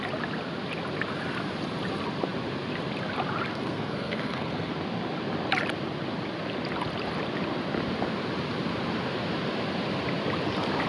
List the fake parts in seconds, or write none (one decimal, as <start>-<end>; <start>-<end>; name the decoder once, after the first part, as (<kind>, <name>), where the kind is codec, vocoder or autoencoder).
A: 3.5-4.7 (codec, SNAC)